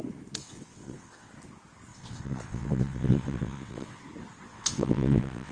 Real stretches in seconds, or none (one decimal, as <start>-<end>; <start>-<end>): 0.0-0.4; 1.3-1.9; 4.0-4.5